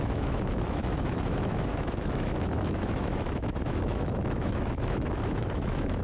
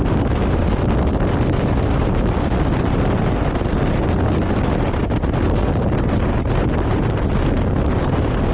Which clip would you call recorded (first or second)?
second